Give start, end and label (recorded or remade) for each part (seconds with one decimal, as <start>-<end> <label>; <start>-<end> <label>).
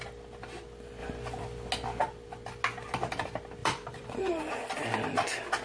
0.0-3.6 recorded; 3.6-4.4 remade; 4.4-5.6 recorded